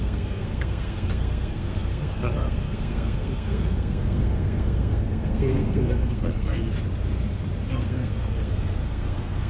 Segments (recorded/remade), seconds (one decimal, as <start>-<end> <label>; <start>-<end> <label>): 0.0-6.6 remade; 6.6-7.7 recorded; 7.7-9.5 remade